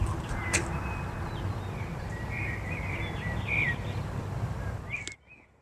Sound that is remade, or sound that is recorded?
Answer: recorded